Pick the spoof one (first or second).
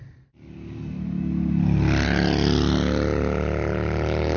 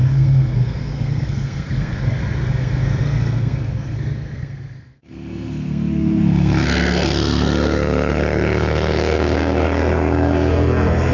second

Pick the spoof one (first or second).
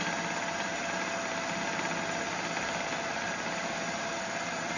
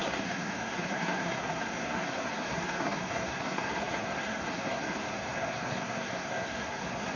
second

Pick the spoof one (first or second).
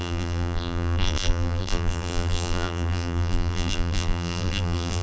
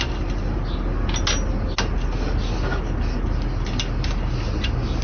first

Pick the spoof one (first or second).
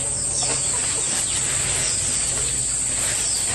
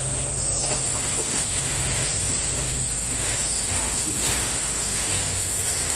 second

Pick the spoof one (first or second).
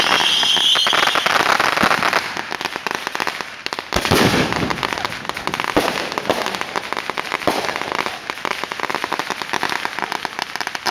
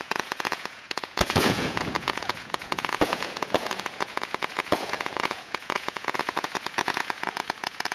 second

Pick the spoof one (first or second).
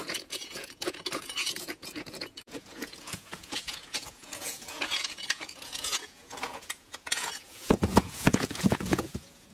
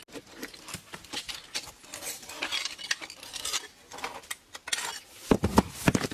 first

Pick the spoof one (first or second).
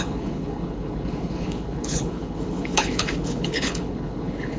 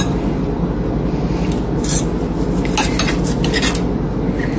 first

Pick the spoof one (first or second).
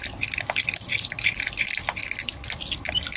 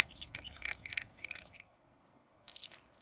second